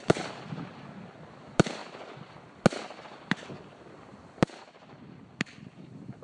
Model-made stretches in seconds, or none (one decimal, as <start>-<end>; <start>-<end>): none

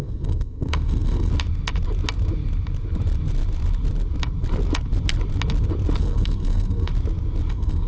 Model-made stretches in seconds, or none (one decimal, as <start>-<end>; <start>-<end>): 0.0-1.3; 6.0-6.9; 7.5-7.9

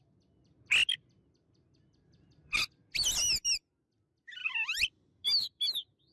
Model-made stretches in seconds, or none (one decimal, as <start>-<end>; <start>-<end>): none

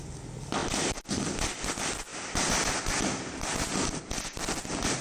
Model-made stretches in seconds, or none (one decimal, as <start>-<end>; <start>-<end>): none

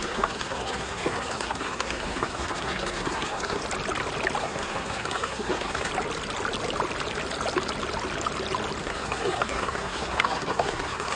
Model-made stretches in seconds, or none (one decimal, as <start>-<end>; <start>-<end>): 0.0-3.6; 4.4-5.9; 8.8-11.2

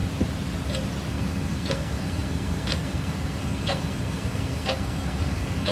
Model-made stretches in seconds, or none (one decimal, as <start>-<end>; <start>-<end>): 1.1-5.7